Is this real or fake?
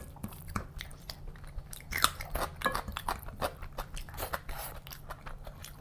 fake